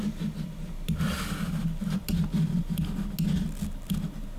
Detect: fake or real real